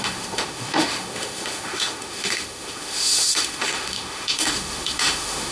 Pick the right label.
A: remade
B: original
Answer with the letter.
A